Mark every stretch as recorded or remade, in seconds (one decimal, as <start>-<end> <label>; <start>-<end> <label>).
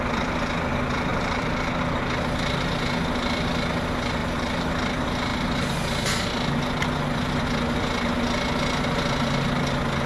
0.0-1.1 recorded; 1.1-1.8 remade; 1.8-4.2 recorded; 4.2-4.7 remade; 4.7-10.1 recorded